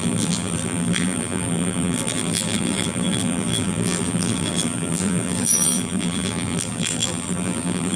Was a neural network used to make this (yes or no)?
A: yes